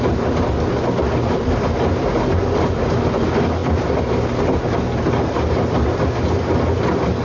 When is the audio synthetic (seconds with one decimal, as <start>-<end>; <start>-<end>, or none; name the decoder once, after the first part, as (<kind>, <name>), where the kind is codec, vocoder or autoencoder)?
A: none